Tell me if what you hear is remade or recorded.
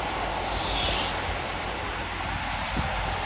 recorded